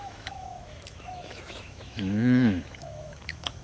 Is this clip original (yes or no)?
no